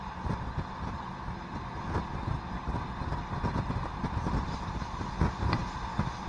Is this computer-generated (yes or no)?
no